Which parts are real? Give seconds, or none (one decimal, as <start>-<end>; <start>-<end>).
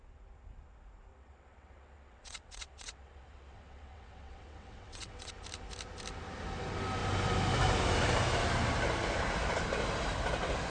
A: 0.0-1.1; 5.3-10.7